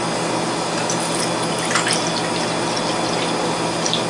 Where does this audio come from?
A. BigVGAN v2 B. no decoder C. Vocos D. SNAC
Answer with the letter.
B